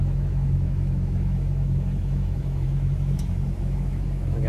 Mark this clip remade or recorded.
remade